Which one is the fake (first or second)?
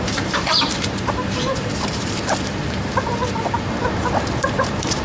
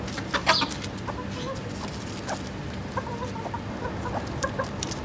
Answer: first